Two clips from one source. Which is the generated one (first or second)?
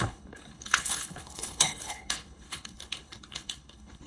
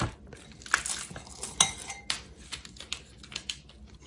first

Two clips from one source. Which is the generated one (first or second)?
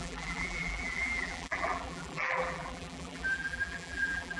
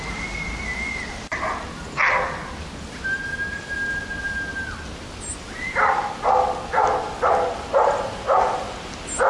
first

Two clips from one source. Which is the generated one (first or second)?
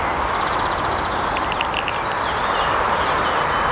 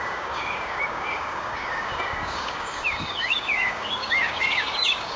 second